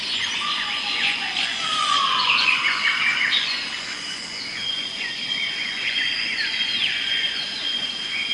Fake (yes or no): yes